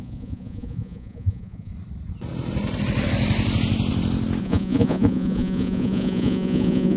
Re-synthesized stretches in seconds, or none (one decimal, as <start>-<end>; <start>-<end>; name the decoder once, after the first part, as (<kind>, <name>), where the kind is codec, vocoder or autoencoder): 0.0-1.7 (vocoder, Vocos); 4.4-7.0